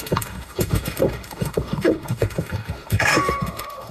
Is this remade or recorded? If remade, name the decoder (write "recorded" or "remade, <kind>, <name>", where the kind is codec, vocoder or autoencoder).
remade, autoencoder, DAC-VAE